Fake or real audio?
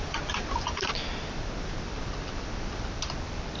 fake